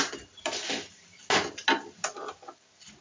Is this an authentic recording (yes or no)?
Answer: yes